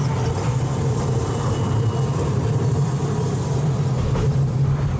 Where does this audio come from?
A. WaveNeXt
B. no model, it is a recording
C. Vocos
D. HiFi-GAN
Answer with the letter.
B